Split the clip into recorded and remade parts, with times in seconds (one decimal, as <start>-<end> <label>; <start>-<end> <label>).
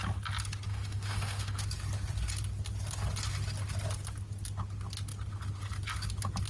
0.0-0.7 recorded; 0.7-1.6 remade; 1.6-6.5 recorded